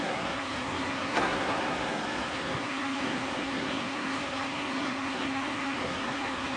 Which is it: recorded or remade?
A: remade